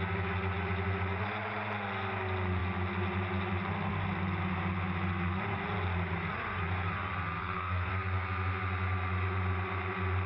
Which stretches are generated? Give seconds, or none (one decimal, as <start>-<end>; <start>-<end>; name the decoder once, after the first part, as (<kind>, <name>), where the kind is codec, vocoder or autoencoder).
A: 7.4-7.9 (codec, SNAC)

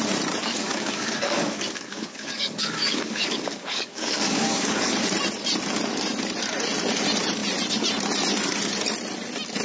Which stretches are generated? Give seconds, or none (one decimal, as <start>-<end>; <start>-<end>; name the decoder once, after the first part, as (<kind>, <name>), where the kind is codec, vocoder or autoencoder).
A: 0.4-4.9 (codec, DAC)

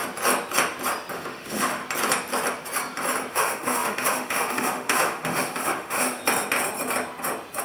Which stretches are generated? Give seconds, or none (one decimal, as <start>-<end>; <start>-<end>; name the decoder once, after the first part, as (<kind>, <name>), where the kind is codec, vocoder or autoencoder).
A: 1.1-1.8 (autoencoder, DAC-VAE); 3.3-6.2

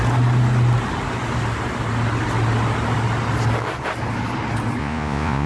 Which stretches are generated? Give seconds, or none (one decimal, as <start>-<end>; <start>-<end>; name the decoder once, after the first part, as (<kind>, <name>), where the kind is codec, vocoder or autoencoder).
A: 4.8-5.5 (vocoder, Vocos)

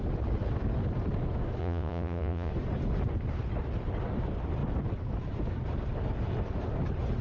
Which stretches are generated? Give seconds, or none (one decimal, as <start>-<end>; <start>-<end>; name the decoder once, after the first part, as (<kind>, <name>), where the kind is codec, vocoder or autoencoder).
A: 1.6-2.5 (vocoder, Vocos)